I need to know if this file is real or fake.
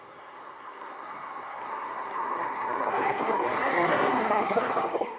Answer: fake